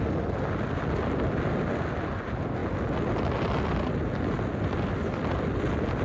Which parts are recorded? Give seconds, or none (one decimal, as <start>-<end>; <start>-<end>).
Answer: 0.0-6.0